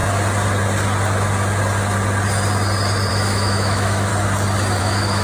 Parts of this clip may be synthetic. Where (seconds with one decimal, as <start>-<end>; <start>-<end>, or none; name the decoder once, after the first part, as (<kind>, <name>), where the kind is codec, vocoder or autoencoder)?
3.1-4.1 (autoencoder, DAC-VAE); 4.8-5.2